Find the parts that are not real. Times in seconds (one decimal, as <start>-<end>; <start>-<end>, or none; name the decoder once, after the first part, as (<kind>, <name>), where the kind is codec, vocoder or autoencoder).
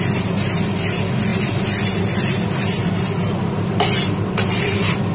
none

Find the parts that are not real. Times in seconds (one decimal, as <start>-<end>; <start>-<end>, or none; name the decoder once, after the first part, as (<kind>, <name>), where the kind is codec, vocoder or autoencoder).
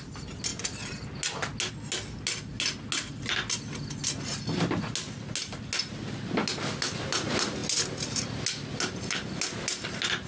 none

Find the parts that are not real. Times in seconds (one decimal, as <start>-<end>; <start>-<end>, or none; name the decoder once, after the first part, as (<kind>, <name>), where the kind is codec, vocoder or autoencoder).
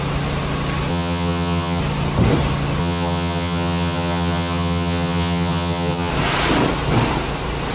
0.9-1.8 (vocoder, HiFi-GAN); 2.8-6.1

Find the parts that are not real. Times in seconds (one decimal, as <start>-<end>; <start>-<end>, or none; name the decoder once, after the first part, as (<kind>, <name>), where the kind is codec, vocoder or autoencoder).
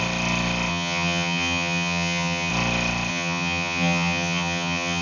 0.7-2.5 (vocoder, HiFi-GAN); 3.1-5.0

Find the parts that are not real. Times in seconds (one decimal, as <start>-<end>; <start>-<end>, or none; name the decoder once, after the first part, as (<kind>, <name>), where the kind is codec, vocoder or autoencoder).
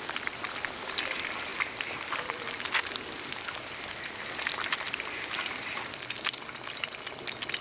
none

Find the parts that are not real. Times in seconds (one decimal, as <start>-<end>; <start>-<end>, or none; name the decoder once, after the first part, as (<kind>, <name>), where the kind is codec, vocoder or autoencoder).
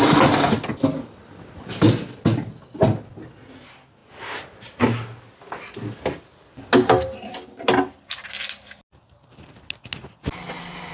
none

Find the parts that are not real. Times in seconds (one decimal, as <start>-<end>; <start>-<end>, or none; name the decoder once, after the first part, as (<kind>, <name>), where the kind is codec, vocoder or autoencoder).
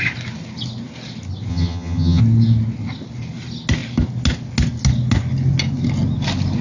1.5-2.2 (vocoder, HiFi-GAN)